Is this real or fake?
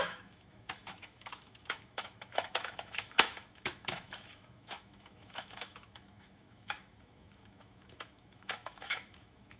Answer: fake